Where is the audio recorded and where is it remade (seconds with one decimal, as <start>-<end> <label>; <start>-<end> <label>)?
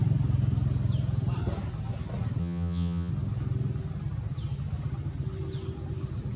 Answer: 0.0-2.4 recorded; 2.4-3.1 remade; 3.1-6.4 recorded